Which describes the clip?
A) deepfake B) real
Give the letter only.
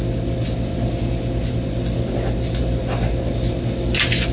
B